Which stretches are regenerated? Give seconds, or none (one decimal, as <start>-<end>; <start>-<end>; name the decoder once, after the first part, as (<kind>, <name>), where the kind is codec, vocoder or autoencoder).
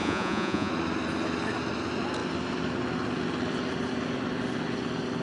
0.0-0.7 (vocoder, Vocos)